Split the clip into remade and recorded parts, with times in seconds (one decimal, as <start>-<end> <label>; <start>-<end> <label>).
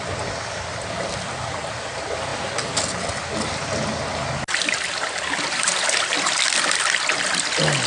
0.0-7.9 recorded